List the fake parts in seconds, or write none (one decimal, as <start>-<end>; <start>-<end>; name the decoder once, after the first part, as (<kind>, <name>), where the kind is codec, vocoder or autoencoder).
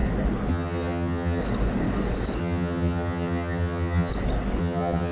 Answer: 0.5-1.4 (vocoder, HiFi-GAN); 2.4-4.1; 4.6-5.1